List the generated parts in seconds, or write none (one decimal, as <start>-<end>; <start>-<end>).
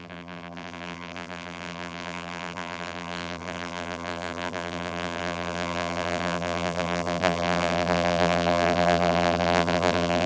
0.0-10.3